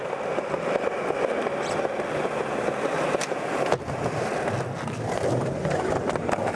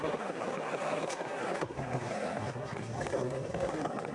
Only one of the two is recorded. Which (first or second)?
first